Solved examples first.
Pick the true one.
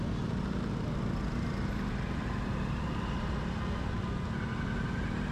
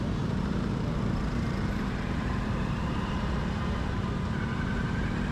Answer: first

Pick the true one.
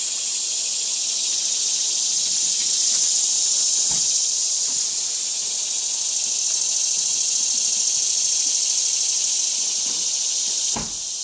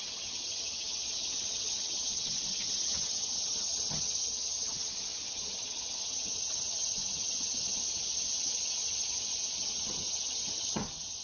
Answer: first